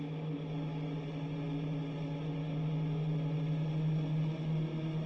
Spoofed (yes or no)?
no